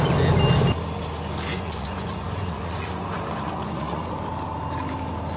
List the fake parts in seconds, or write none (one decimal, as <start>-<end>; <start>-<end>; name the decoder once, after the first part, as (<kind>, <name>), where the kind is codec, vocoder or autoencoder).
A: 1.5-4.1 (vocoder, Vocos)